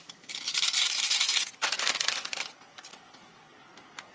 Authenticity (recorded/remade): recorded